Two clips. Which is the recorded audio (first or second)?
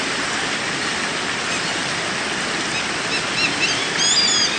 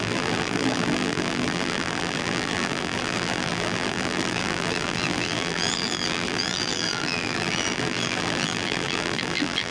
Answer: first